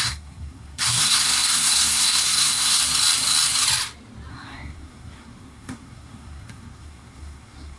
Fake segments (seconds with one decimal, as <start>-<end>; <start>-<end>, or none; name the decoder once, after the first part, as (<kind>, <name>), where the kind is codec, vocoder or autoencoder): 0.0-2.8 (codec, SNAC); 4.3-7.8